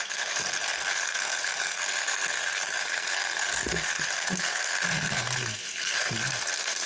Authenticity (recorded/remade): remade